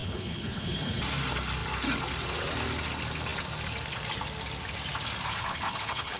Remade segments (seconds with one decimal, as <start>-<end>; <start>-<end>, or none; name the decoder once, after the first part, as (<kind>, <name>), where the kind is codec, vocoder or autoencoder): 0.0-1.0 (codec, HILCodec); 5.3-6.2

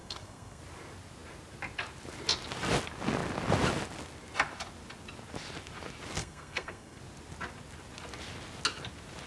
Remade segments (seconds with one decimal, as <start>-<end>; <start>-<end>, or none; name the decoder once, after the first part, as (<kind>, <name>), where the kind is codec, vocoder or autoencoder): 0.0-0.6 (codec, SNAC); 6.2-7.0